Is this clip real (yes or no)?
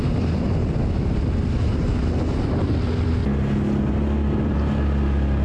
yes